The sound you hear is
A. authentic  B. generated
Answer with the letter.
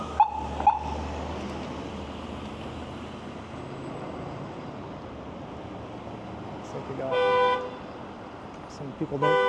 A